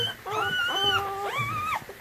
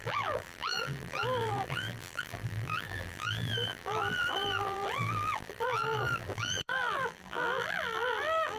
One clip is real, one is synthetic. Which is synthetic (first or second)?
second